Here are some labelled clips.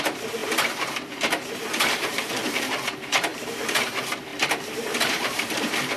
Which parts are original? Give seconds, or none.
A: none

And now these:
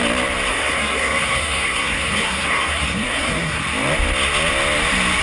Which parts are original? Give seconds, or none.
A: 0.0-0.5; 3.6-5.2

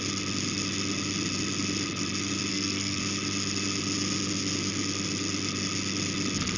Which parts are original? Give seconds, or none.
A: 0.0-2.5; 3.0-6.6